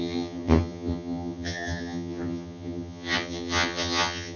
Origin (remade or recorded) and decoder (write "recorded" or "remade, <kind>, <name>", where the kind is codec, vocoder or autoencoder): remade, vocoder, HiFi-GAN